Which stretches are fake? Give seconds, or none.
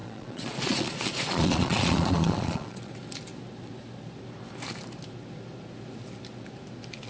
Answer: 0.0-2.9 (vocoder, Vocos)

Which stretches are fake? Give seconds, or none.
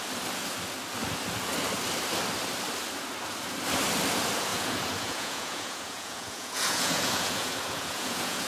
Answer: 4.5-8.5 (vocoder, Vocos)